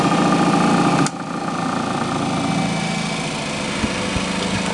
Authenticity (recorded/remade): recorded